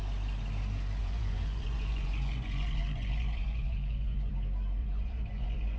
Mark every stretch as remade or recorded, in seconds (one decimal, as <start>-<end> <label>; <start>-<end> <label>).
0.0-1.0 recorded; 1.0-4.3 remade; 4.3-4.8 recorded; 4.8-5.8 remade